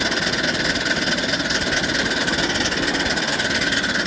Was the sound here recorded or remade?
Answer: recorded